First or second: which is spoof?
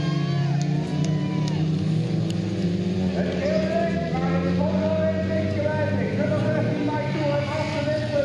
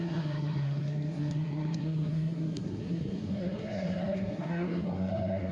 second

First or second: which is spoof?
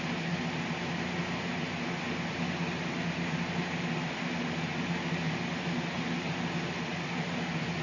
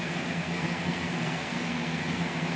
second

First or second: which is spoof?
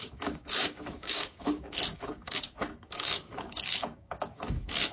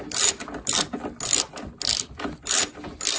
first